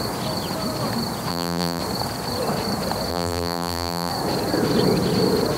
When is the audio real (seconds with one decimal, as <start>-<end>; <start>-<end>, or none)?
0.0-1.3; 1.8-3.1; 4.1-5.6